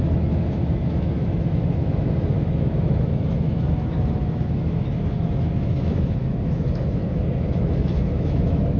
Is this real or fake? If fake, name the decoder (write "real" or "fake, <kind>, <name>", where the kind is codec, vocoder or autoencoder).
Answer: fake, autoencoder, DAC-VAE